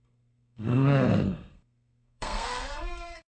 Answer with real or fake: fake